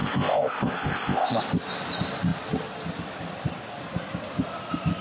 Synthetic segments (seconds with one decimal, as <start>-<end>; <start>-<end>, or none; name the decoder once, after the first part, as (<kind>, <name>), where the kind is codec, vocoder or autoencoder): 0.0-1.4 (codec, ZipCodec)